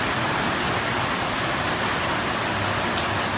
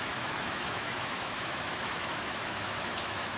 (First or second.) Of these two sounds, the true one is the first